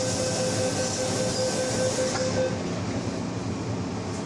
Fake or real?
real